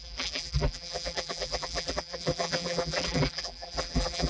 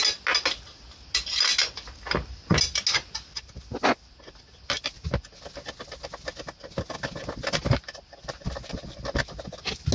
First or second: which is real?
second